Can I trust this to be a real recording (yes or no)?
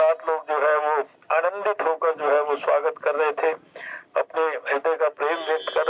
yes